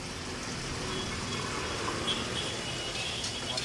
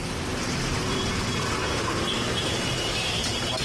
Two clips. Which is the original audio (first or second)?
first